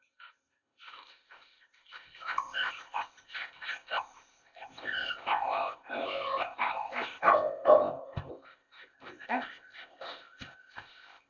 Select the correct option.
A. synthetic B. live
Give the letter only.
A